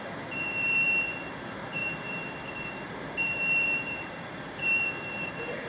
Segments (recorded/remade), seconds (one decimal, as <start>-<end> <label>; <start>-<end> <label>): 0.0-5.7 remade